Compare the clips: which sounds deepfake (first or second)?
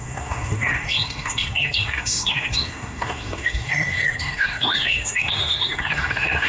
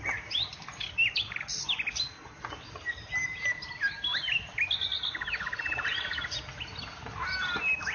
first